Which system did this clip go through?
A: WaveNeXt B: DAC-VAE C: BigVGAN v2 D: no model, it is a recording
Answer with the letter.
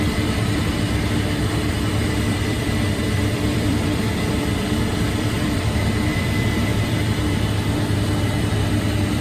C